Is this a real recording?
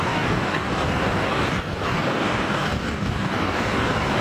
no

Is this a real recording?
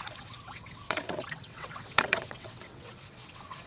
no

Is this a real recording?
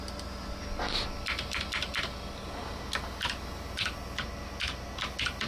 yes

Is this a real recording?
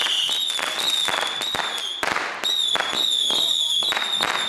yes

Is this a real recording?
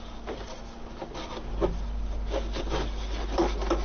yes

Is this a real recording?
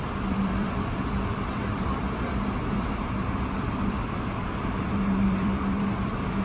no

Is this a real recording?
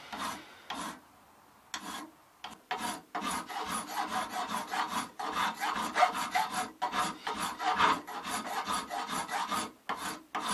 yes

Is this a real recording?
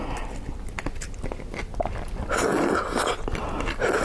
yes